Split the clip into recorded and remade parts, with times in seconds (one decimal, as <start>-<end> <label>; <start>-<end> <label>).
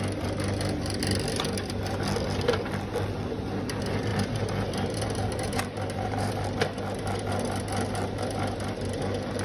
0.0-4.1 recorded; 4.1-6.3 remade; 6.3-9.4 recorded